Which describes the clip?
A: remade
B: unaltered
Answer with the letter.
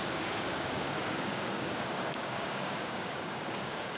A